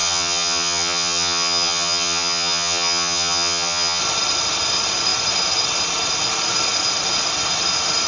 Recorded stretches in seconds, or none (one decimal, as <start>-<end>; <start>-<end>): 4.0-8.1